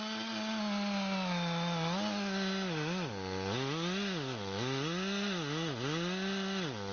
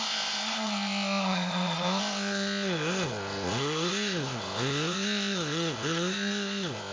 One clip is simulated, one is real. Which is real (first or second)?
first